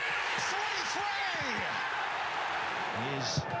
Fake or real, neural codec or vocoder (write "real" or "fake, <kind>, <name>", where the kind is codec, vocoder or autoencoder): real